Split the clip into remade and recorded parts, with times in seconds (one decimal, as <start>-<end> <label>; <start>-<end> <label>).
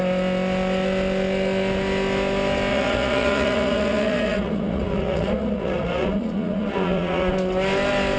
0.0-2.7 recorded; 2.7-7.3 remade; 7.3-8.2 recorded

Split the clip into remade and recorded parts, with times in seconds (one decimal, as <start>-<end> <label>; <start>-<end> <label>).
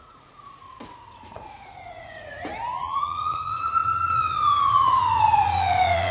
0.0-6.1 remade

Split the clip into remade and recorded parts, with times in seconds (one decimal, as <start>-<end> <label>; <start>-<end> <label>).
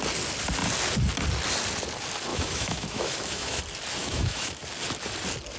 0.0-2.3 recorded; 2.3-3.6 remade; 3.6-4.0 recorded; 4.0-4.6 remade; 4.6-5.6 recorded